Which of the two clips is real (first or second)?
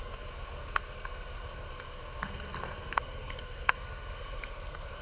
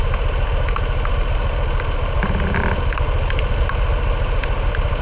second